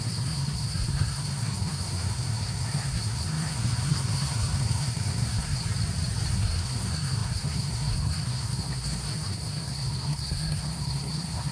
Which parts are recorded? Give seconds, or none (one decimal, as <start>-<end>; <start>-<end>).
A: 5.6-6.3